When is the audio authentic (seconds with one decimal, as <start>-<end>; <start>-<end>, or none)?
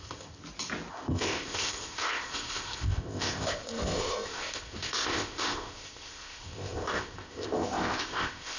0.4-0.9